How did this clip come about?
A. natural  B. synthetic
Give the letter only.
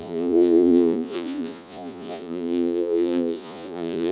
B